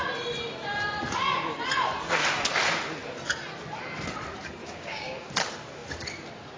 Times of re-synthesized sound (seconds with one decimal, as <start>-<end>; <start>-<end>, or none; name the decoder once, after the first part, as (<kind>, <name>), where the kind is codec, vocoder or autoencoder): 4.6-5.3 (codec, DAC)